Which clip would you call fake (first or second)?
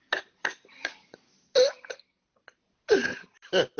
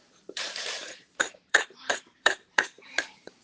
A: second